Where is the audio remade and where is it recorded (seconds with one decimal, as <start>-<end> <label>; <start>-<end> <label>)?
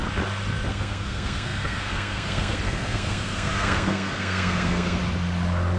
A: 0.0-0.7 recorded; 0.7-5.0 remade; 5.0-5.8 recorded